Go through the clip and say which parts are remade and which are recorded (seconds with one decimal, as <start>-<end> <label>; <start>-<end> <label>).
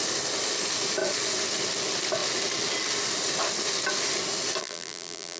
0.0-4.6 recorded; 4.6-5.4 remade